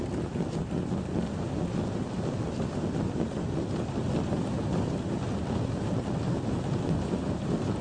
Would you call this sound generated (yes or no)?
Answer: no